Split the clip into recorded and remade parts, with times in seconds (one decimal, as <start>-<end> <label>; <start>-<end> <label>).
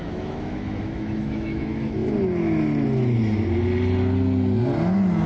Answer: 0.0-2.0 remade; 2.0-5.3 recorded